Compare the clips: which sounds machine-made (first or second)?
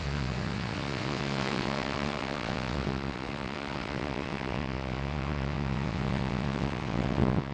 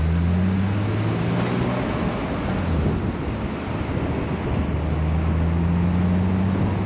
first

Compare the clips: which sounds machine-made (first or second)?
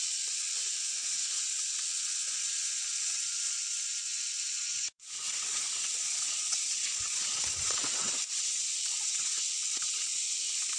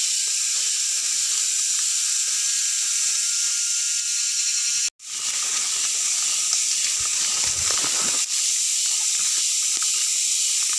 first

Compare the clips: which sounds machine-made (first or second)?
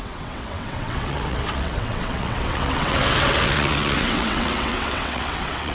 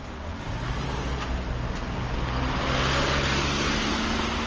first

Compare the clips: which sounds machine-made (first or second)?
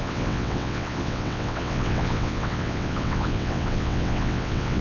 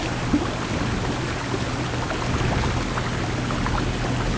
first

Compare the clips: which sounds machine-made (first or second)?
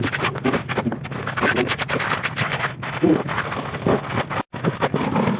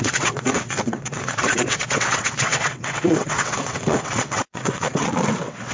second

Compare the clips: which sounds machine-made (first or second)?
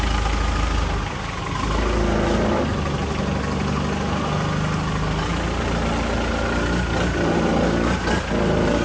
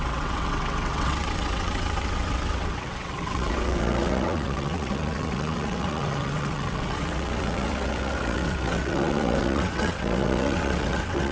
second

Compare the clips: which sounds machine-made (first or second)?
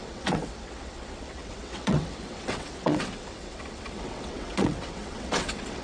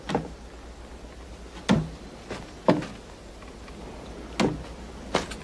first